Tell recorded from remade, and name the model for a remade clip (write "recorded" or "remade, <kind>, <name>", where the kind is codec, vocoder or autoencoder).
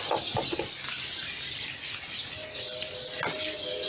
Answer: recorded